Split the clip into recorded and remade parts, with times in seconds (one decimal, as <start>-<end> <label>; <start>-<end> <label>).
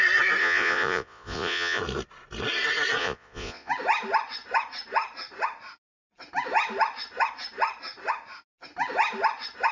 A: 0.0-0.4 recorded; 0.4-1.8 remade; 1.8-3.0 recorded; 3.0-3.7 remade; 3.7-9.7 recorded